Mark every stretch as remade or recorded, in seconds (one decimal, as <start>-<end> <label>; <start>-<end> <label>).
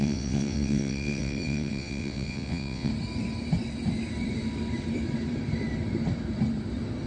0.0-2.9 remade; 2.9-7.1 recorded